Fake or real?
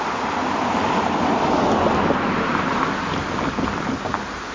real